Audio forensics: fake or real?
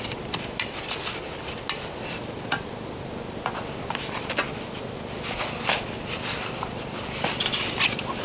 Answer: real